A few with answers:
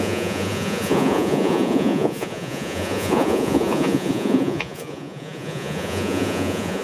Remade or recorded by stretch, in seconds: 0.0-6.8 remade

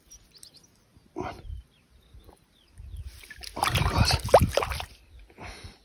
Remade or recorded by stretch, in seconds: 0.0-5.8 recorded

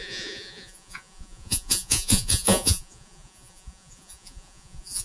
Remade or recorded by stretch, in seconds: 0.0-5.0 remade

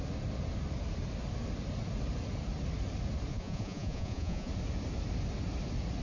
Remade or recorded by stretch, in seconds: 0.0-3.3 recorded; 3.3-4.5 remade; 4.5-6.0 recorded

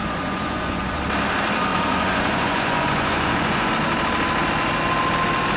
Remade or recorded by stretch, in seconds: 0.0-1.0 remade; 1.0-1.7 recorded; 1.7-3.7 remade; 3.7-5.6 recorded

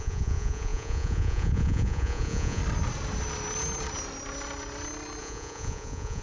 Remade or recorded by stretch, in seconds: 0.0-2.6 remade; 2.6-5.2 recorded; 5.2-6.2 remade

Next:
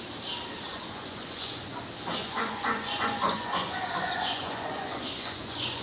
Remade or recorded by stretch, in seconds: 0.0-0.7 recorded; 0.7-1.8 remade; 1.8-2.2 recorded; 2.2-5.8 remade

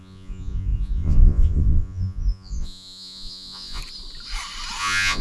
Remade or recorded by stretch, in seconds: 0.0-3.8 remade; 3.8-4.8 recorded; 4.8-5.2 remade